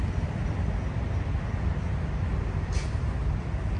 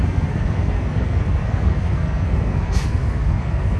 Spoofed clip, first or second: second